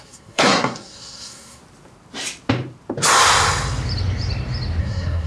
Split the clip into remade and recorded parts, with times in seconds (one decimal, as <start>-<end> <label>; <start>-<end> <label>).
0.0-1.6 remade; 1.6-4.8 recorded; 4.8-5.3 remade